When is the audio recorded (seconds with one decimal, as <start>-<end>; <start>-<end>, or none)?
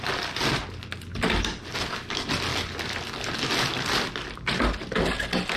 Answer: 0.0-5.6